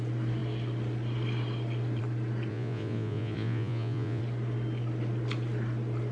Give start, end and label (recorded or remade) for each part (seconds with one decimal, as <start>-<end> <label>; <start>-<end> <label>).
0.0-2.5 recorded; 2.5-4.2 remade; 4.2-6.1 recorded